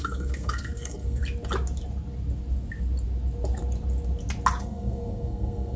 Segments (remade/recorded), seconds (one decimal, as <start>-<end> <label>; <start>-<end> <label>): 0.0-1.2 remade; 1.2-4.6 recorded; 4.6-5.8 remade